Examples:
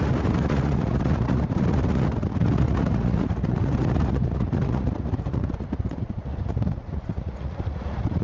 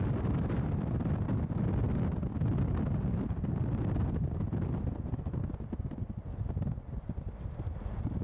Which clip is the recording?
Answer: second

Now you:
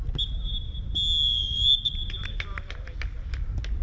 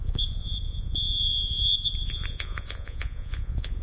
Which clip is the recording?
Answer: first